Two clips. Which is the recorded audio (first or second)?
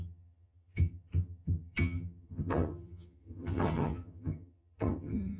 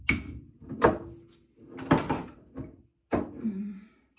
second